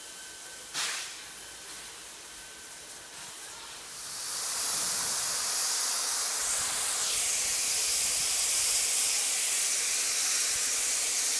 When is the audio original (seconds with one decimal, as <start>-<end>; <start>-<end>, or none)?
0.0-11.4